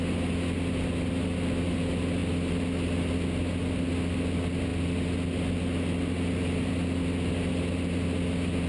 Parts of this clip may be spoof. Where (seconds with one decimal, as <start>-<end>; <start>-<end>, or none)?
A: none